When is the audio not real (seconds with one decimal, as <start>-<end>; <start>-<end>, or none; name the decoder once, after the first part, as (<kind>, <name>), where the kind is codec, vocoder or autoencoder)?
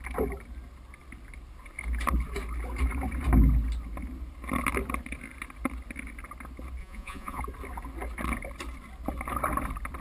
6.8-7.4 (vocoder, Vocos)